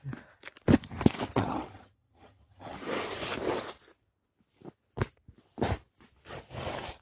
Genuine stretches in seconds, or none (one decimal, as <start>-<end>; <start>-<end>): 0.0-1.3; 2.8-7.0